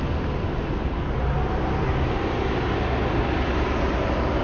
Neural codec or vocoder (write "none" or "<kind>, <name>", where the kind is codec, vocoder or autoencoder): none